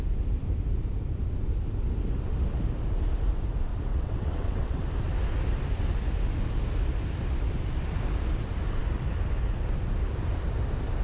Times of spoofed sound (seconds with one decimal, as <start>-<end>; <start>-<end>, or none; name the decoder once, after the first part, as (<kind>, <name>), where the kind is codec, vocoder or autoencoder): 3.9-4.8 (vocoder, WaveNeXt)